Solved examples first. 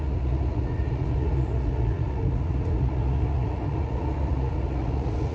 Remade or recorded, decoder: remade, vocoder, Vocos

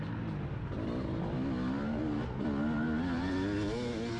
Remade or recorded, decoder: recorded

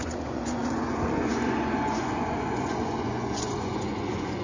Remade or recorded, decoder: remade, vocoder, Vocos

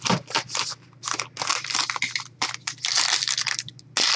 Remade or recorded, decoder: recorded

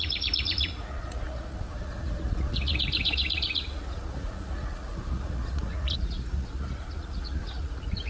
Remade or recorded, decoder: remade, vocoder, Vocos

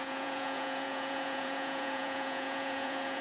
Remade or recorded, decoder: remade, vocoder, Vocos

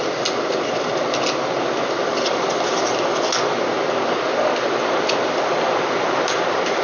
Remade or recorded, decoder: recorded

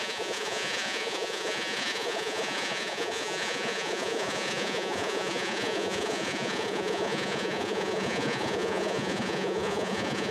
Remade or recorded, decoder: remade, vocoder, Vocos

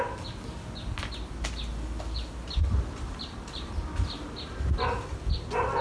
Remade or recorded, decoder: recorded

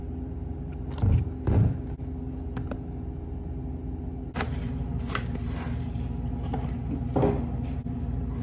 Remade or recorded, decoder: recorded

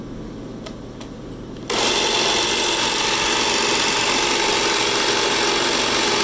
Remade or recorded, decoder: recorded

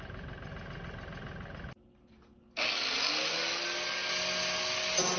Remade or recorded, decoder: recorded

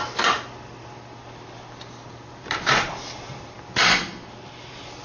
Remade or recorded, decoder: recorded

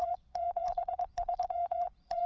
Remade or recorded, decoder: remade, vocoder, Vocos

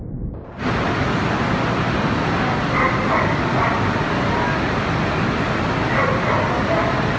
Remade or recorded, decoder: recorded